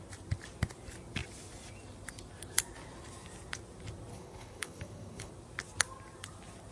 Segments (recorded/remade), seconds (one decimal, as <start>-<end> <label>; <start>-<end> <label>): 0.0-4.1 recorded; 4.1-5.3 remade; 5.3-6.7 recorded